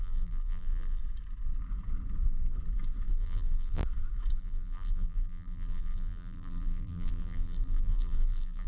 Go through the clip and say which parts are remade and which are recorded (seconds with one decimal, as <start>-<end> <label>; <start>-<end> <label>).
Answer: 0.0-1.0 remade; 1.0-3.1 recorded; 3.1-3.8 remade; 3.8-4.4 recorded; 4.4-8.7 remade